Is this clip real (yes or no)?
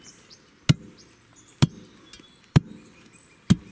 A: yes